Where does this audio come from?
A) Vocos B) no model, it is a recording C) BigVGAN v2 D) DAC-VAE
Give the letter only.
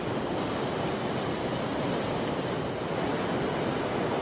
B